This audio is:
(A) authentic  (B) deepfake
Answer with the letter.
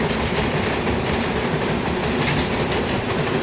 A